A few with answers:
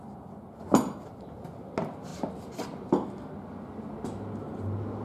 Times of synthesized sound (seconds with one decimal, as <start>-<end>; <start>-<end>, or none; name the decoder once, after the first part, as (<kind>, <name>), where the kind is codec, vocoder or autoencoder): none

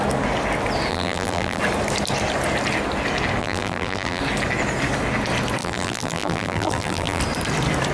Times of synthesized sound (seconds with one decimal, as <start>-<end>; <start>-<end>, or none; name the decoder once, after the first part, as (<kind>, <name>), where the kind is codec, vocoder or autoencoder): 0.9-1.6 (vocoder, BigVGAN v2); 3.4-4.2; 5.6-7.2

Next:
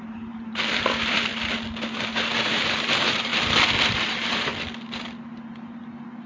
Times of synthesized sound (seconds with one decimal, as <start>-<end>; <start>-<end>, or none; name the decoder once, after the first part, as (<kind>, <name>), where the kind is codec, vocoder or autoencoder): 0.0-1.3 (vocoder, BigVGAN v2); 2.0-3.3; 3.9-4.5

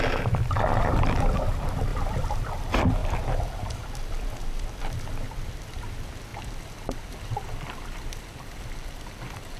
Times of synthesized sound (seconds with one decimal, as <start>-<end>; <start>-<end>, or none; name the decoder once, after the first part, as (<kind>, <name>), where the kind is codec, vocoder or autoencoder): 1.9-2.5 (vocoder, BigVGAN v2); 3.0-5.1; 6.3-9.6